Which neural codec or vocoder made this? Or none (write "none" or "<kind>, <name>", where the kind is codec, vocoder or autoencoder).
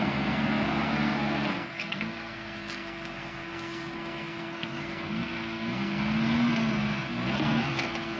codec, SNAC